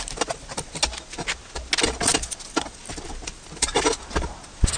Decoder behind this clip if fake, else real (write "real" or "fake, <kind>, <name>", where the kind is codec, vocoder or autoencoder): real